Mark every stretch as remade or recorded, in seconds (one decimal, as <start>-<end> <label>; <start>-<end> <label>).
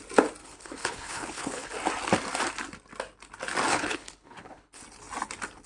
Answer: 0.0-0.4 recorded; 0.4-1.7 remade; 1.7-3.7 recorded; 3.7-4.8 remade; 4.8-5.7 recorded